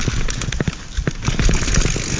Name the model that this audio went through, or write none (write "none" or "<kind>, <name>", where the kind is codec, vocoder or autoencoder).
none